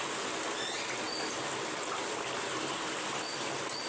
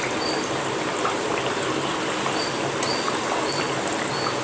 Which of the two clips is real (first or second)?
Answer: first